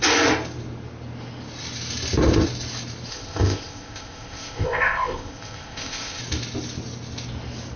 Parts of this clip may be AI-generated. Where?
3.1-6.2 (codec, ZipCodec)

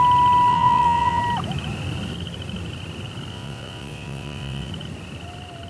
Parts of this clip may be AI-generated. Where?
0.5-1.2 (vocoder, WaveNeXt); 3.3-4.7

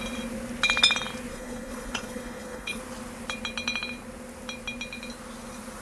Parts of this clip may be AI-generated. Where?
1.3-2.8 (codec, HILCodec)

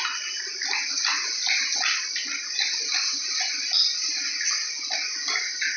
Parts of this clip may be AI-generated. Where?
none

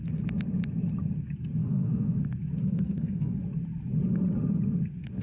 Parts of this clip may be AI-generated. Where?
1.6-2.2 (codec, SNAC); 2.6-3.4

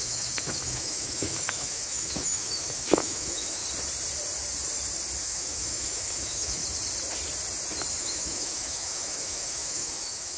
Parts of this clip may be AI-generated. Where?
0.0-3.6 (autoencoder, DAC-VAE); 5.2-6.6; 8.0-10.4

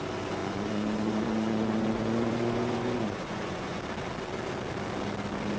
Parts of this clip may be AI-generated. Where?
0.4-3.8 (vocoder, Vocos)